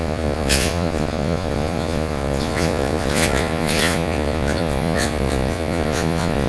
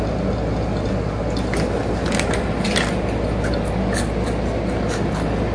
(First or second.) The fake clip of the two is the first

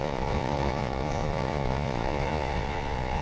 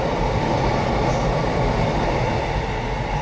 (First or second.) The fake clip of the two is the first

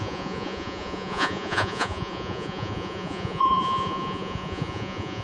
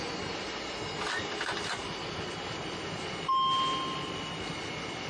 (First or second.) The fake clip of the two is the first